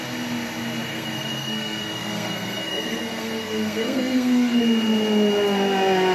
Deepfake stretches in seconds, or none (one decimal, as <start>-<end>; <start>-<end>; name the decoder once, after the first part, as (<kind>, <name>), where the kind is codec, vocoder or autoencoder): 0.9-4.6 (codec, SNAC)